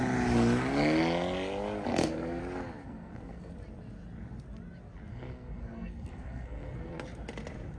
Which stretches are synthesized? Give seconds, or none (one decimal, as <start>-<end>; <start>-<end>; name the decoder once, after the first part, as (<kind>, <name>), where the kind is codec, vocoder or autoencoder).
1.9-2.4 (codec, SNAC); 2.8-3.5; 5.1-6.9